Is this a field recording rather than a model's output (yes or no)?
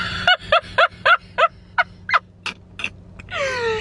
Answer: yes